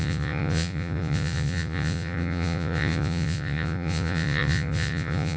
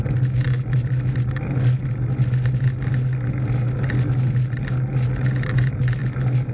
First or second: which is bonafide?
second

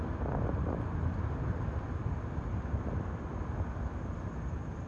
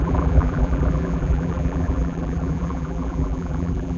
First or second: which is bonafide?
first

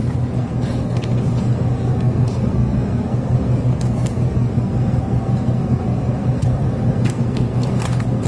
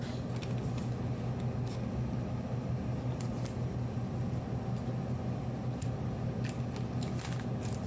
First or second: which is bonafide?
second